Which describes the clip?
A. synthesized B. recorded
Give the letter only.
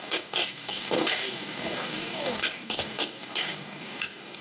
A